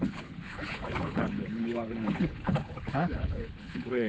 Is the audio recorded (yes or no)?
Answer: no